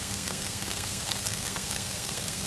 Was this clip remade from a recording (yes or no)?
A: yes